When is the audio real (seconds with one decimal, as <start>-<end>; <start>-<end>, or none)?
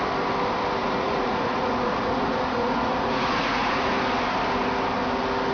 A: 0.0-0.8; 3.9-5.5